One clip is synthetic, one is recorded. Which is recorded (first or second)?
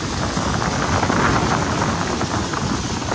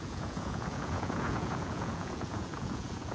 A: first